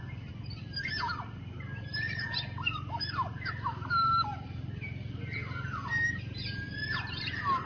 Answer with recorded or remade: recorded